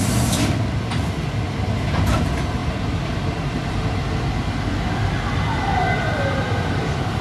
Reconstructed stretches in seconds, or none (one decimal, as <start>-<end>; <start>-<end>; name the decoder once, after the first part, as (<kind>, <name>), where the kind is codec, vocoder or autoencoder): none